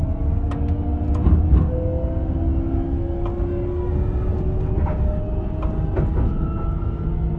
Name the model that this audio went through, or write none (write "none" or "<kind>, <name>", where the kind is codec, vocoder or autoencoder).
none